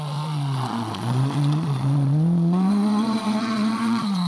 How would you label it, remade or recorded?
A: remade